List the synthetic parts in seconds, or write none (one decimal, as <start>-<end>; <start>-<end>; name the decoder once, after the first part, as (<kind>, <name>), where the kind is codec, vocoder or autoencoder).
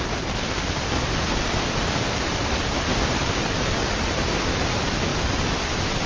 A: none